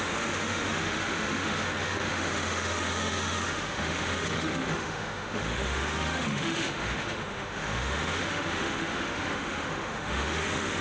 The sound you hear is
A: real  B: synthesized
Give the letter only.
B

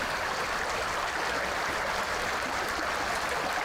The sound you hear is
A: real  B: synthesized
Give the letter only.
A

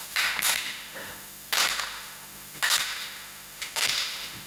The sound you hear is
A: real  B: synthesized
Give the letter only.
B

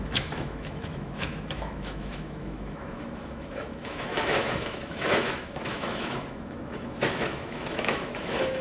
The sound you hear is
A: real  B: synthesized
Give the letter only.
B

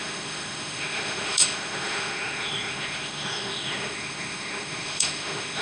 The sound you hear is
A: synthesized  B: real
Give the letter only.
A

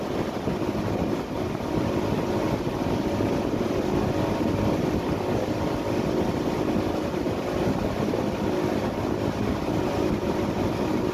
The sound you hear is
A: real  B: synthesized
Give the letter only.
A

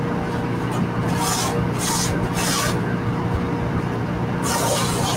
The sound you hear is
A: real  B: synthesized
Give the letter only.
A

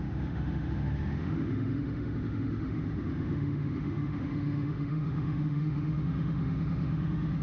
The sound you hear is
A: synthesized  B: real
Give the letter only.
A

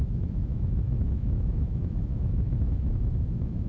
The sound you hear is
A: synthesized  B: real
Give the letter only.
A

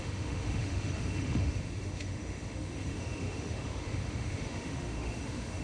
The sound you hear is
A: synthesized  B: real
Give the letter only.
A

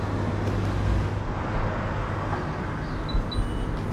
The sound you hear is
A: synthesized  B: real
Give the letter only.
B